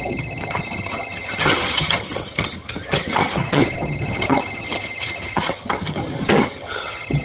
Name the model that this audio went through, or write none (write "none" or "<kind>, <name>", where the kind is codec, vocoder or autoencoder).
vocoder, HiFi-GAN